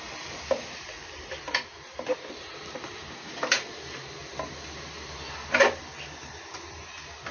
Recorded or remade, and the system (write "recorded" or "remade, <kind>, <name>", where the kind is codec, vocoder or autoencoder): recorded